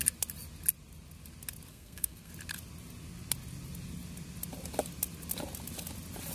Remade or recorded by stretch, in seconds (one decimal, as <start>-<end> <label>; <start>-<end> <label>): 0.0-1.7 recorded; 1.7-2.3 remade; 2.3-6.3 recorded